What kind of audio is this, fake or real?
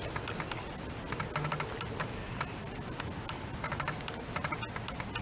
real